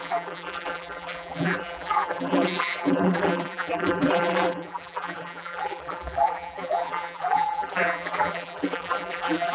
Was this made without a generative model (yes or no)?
no